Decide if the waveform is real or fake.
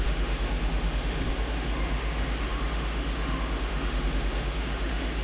fake